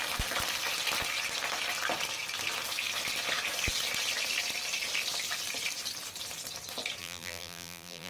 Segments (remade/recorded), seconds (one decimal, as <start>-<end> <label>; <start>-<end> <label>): 0.0-7.0 recorded; 7.0-8.1 remade